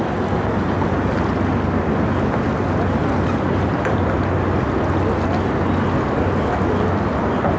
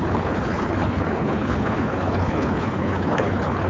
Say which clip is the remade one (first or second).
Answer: second